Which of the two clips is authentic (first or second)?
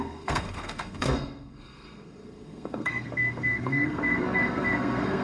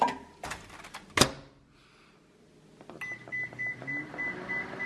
second